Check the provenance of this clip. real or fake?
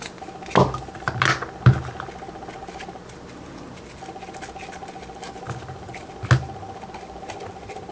real